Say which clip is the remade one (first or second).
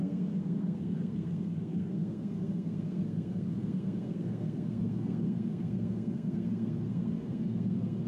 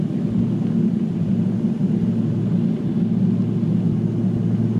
first